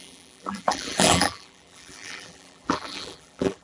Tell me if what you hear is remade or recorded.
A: remade